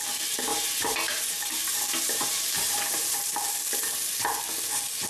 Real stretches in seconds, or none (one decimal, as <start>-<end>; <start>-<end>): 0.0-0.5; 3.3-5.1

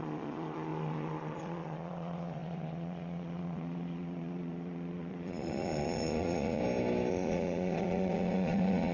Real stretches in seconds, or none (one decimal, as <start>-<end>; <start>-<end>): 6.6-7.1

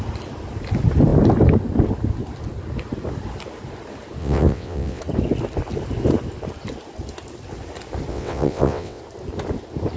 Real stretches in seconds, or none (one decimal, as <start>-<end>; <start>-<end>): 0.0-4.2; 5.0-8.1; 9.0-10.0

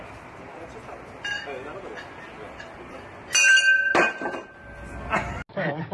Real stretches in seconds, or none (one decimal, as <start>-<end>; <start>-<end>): 0.0-5.9

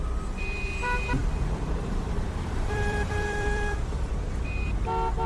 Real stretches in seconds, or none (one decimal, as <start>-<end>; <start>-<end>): 0.0-1.2; 4.1-5.3

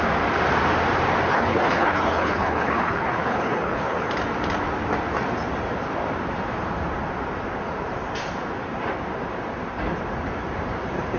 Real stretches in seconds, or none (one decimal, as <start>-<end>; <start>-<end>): 0.0-1.3; 4.1-11.2

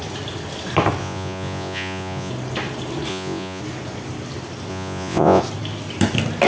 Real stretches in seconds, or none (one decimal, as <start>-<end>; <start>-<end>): 0.0-1.0; 2.3-3.1; 3.6-4.7; 5.4-6.5

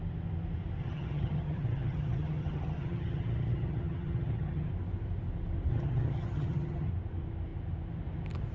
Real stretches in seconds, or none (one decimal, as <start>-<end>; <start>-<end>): 0.0-0.8; 4.7-5.7; 6.9-8.5